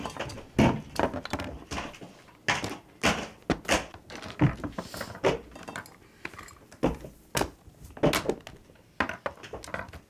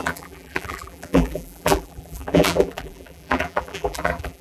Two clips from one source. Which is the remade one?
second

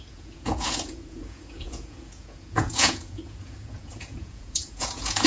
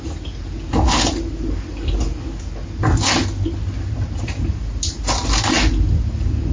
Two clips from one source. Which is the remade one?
first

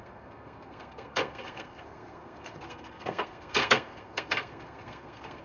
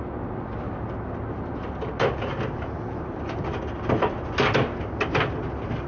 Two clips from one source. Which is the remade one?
first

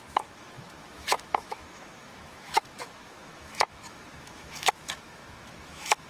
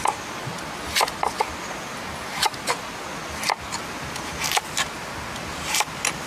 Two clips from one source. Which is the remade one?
first